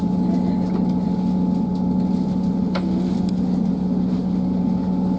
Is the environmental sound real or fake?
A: real